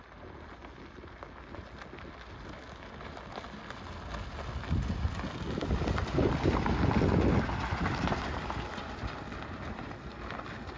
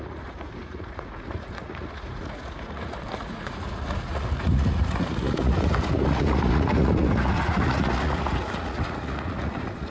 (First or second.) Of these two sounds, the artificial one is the second